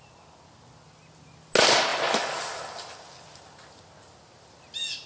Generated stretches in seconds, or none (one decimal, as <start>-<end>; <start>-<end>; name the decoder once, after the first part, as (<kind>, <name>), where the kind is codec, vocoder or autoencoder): none